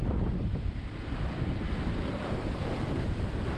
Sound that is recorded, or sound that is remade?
remade